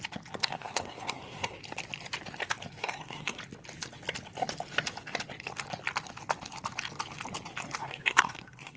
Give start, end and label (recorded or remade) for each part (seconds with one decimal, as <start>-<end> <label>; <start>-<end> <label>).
0.0-0.4 recorded; 0.4-1.6 remade; 1.6-2.8 recorded; 2.8-3.4 remade; 3.4-7.8 recorded; 7.8-8.8 remade